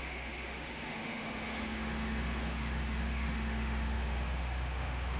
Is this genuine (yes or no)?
no